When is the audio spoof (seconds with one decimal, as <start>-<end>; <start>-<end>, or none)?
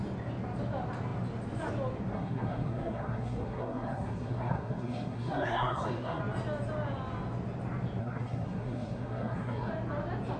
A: 2.1-6.2; 8.0-9.7